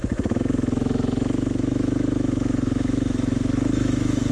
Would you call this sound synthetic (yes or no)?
yes